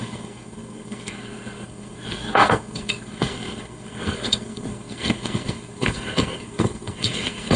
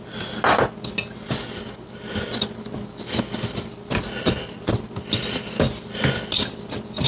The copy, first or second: first